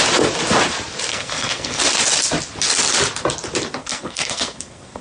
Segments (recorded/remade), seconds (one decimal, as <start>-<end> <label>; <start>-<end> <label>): 0.0-1.1 recorded; 1.1-1.8 remade; 1.8-3.8 recorded; 3.8-5.0 remade